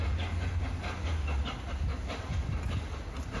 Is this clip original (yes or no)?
yes